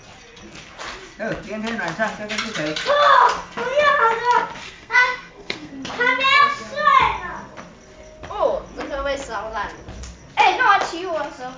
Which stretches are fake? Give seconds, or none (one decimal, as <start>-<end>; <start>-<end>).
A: 4.6-5.7